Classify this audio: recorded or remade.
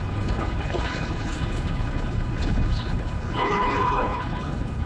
remade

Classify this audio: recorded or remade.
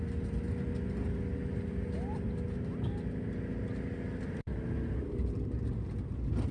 recorded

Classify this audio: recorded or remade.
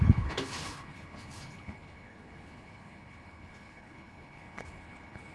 remade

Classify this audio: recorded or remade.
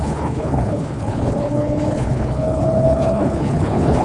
remade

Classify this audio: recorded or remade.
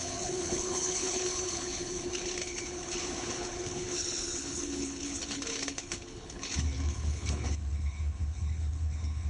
remade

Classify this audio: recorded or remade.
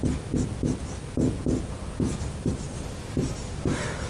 recorded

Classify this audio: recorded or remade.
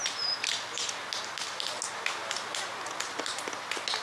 recorded